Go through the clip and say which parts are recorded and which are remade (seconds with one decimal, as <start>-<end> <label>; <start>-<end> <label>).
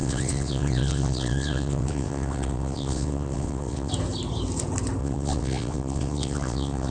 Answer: 0.0-3.9 remade; 3.9-5.0 recorded; 5.0-6.9 remade